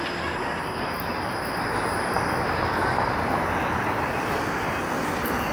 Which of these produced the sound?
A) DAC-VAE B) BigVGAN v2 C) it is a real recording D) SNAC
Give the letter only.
C